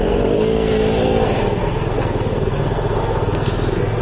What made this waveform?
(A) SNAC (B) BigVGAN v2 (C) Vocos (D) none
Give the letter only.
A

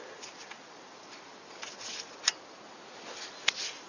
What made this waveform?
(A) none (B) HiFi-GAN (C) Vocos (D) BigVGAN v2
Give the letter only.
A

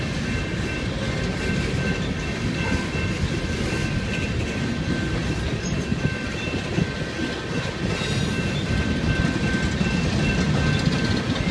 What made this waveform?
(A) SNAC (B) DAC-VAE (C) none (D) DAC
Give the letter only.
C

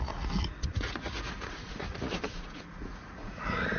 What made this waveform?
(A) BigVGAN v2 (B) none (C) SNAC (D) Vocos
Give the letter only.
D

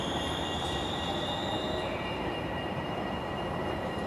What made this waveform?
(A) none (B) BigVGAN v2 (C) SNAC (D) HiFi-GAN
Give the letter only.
B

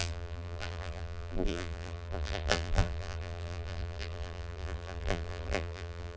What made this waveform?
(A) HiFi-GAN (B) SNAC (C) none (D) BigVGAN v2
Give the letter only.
D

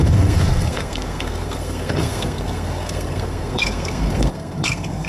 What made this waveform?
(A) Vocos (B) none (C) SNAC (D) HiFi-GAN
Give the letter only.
C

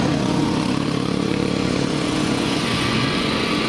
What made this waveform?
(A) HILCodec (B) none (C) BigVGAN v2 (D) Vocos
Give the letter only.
D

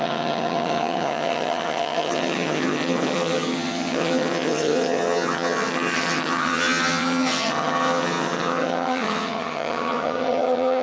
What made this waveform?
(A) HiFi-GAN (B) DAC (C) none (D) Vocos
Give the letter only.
A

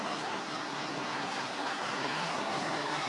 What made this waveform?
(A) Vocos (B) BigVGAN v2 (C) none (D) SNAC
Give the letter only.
D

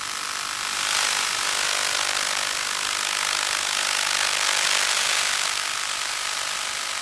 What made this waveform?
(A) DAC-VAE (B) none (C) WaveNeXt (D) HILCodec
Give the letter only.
B